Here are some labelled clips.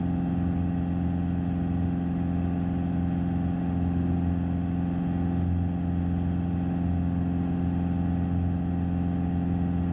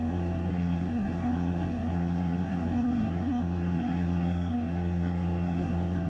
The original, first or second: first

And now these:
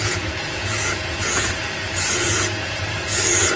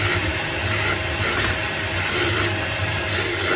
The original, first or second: second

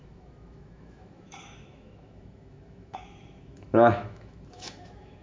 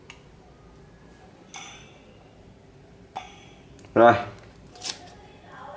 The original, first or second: second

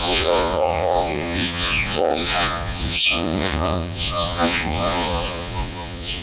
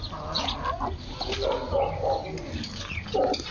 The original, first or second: second